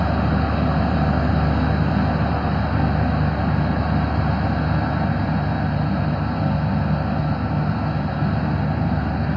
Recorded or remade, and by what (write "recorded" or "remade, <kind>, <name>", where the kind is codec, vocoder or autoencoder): recorded